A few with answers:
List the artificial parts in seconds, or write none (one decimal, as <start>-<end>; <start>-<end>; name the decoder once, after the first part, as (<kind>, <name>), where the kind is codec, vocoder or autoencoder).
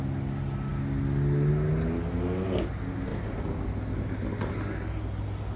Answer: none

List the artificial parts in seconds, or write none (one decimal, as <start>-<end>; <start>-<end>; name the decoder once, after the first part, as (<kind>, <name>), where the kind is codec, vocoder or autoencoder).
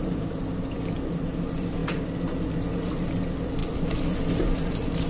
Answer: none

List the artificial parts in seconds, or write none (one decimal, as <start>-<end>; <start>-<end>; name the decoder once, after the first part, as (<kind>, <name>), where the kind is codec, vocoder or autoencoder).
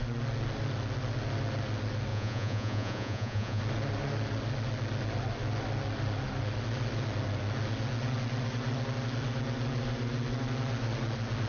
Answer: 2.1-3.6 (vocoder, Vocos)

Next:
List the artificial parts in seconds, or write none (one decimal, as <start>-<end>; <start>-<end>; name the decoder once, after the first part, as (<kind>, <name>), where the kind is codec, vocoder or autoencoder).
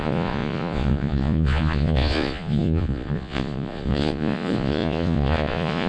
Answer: 0.0-5.9 (vocoder, Vocos)